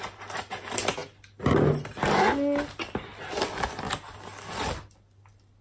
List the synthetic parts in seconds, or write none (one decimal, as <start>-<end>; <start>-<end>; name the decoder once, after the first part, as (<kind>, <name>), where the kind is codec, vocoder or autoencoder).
none